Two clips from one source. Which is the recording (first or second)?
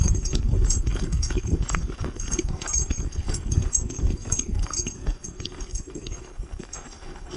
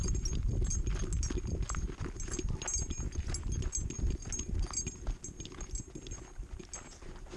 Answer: second